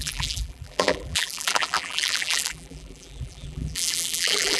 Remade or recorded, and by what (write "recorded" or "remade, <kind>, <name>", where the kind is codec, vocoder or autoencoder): remade, vocoder, BigVGAN v2